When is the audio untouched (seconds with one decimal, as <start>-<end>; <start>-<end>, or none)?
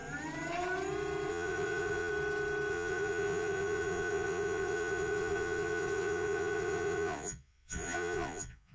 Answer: 0.0-1.3; 2.1-2.7